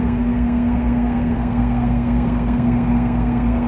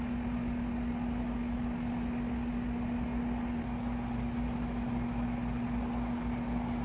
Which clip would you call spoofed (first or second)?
first